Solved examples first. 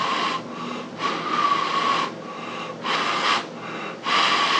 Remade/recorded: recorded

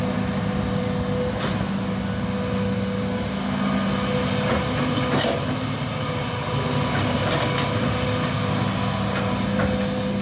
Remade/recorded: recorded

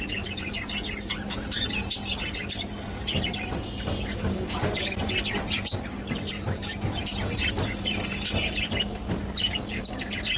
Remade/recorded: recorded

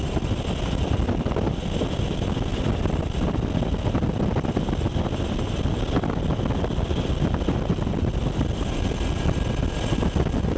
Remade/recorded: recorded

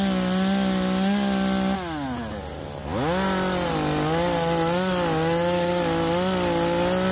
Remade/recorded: recorded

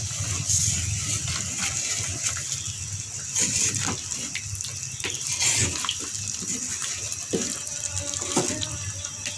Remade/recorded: recorded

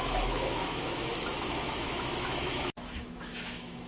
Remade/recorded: remade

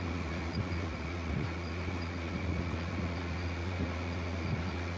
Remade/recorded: remade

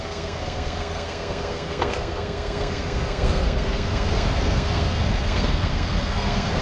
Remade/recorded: remade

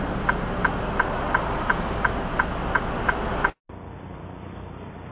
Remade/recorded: recorded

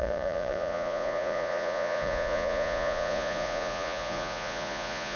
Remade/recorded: remade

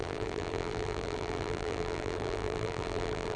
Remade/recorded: remade